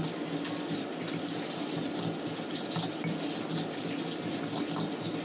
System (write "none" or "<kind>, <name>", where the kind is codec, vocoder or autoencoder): none